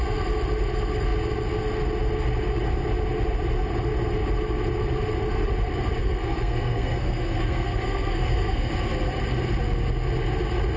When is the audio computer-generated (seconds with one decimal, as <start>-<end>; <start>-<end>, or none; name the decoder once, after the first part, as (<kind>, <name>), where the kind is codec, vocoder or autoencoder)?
6.0-8.7 (codec, SNAC)